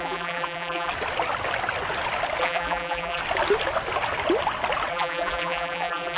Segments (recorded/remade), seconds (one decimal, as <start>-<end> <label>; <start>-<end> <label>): 0.0-0.9 remade; 0.9-2.4 recorded; 2.4-3.2 remade; 3.2-4.9 recorded; 4.9-6.2 remade